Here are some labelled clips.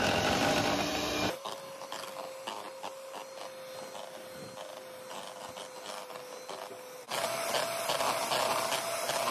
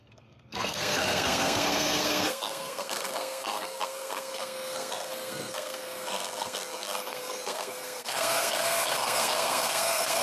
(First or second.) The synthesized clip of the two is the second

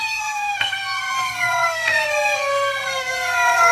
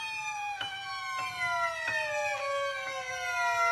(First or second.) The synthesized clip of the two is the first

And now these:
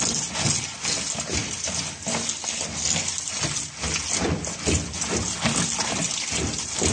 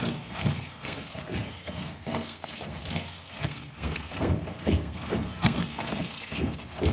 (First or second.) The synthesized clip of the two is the second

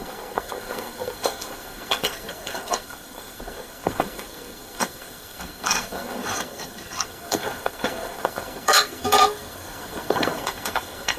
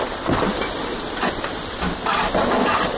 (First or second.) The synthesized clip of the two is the first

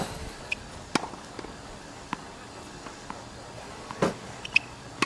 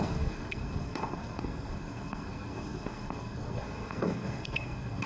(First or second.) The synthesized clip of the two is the second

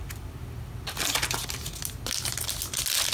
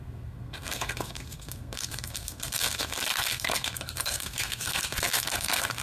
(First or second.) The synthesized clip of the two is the second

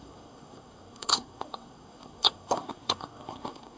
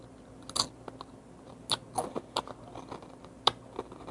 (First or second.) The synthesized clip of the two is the first